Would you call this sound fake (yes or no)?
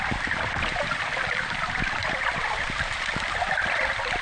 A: yes